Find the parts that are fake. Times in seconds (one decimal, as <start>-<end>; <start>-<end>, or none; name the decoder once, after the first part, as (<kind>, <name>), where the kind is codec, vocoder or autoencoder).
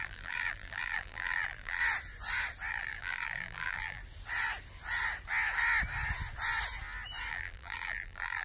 0.0-1.8 (vocoder, BigVGAN v2); 2.7-4.0; 7.3-8.4